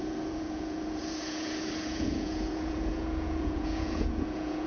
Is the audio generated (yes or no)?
yes